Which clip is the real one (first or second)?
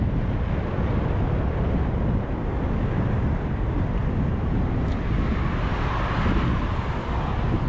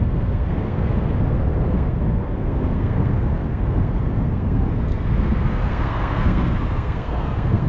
first